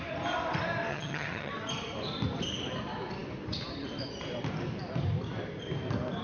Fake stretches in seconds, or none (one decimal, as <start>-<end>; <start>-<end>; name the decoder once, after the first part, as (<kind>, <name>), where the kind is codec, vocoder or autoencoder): 0.9-1.5 (vocoder, HiFi-GAN)